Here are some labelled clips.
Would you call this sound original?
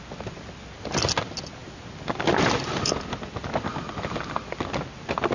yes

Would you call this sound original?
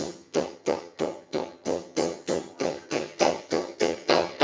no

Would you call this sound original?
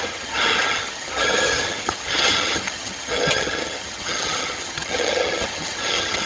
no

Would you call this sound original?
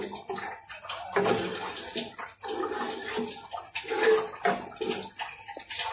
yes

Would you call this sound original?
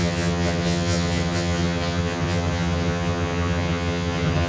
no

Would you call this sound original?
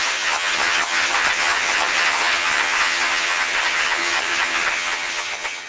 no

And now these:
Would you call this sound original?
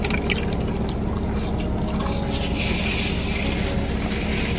yes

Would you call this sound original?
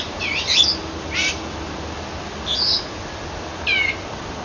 yes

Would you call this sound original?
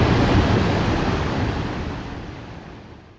yes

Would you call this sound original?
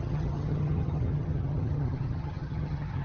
no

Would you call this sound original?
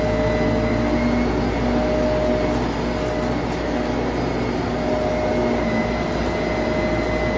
yes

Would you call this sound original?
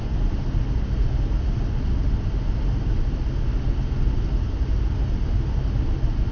yes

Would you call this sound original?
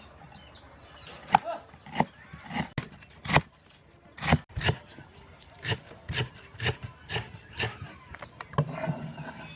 yes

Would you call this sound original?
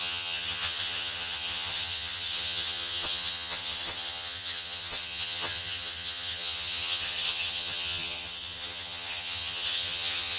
no